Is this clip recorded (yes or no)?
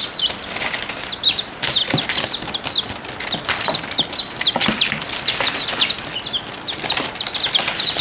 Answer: yes